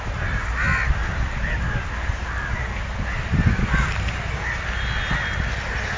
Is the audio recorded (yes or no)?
yes